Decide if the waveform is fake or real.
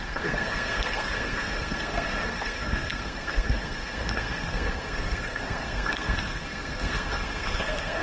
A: fake